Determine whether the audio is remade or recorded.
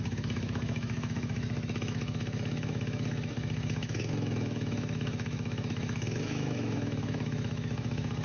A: remade